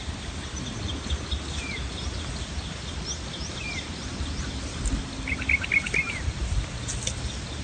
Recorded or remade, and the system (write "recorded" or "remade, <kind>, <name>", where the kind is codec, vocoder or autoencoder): recorded